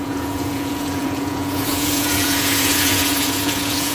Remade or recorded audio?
remade